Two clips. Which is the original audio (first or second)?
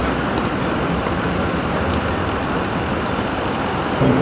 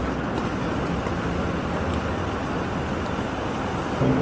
second